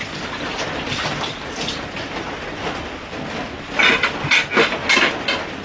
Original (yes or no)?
yes